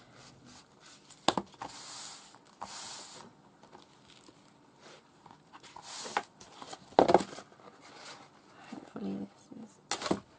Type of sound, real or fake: real